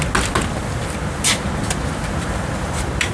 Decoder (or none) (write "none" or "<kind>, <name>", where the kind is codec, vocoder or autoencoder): none